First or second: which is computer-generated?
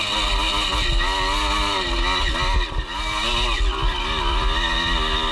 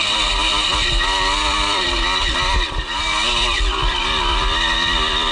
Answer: second